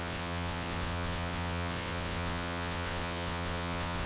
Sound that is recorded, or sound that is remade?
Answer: remade